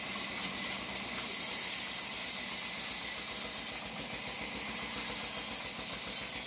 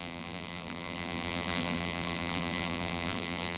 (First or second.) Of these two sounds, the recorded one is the first